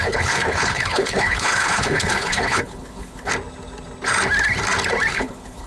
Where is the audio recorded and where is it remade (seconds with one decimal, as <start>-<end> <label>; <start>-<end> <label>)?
0.0-3.3 remade; 3.3-5.1 recorded; 5.1-5.7 remade